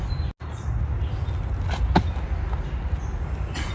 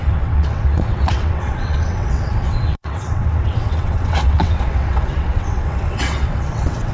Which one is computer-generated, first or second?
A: second